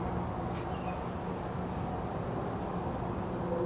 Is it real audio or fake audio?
real